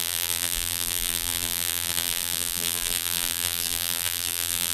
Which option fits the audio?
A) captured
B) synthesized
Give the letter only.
B